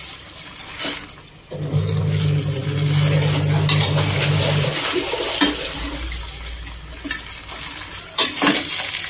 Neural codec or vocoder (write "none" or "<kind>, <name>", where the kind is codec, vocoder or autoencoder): none